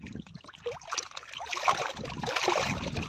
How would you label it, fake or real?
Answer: real